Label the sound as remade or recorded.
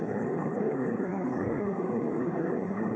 remade